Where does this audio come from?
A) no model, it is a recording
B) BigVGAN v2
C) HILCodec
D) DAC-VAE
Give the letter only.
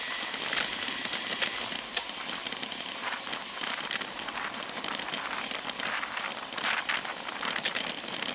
B